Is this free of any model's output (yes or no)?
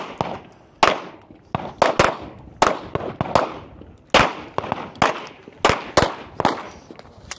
yes